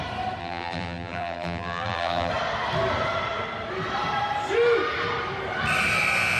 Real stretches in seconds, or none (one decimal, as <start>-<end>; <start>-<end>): 0.0-0.4; 2.3-6.4